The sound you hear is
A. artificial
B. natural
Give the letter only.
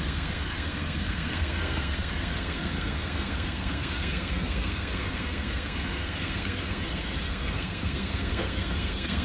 A